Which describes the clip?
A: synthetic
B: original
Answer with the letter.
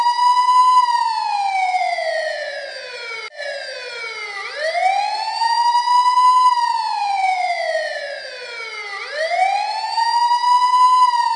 B